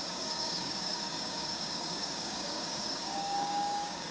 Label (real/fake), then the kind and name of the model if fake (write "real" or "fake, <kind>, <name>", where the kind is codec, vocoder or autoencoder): fake, codec, DAC